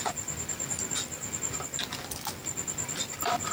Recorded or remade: recorded